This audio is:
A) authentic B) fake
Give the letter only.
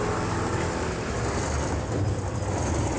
A